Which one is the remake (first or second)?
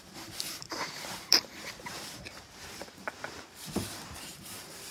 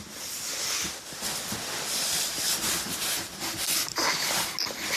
first